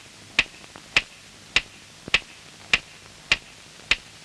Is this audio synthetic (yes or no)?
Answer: no